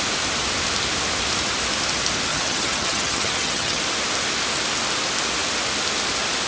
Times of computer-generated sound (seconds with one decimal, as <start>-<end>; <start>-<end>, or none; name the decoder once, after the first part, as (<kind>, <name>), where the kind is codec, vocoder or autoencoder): 2.3-3.8 (vocoder, HiFi-GAN)